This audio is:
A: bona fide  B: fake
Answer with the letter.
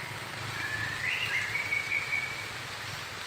A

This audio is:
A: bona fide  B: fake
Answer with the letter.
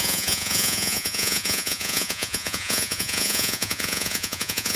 B